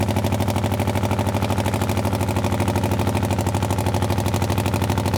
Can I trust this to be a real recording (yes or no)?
yes